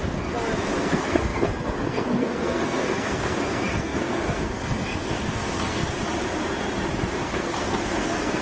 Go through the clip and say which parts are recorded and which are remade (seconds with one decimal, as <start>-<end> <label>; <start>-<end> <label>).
0.0-0.8 recorded; 0.8-5.8 remade; 5.8-7.2 recorded; 7.2-8.4 remade